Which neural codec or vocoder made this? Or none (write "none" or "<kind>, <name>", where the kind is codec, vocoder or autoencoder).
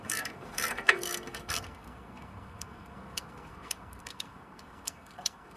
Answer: codec, SNAC